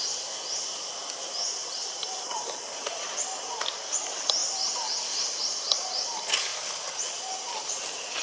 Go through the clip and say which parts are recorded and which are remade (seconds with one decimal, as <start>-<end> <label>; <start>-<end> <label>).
0.0-1.6 recorded; 1.6-3.1 remade; 3.1-4.4 recorded; 4.4-5.4 remade; 5.4-8.2 recorded